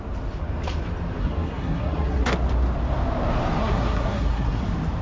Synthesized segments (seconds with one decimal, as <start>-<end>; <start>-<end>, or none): 1.2-2.3; 3.6-4.6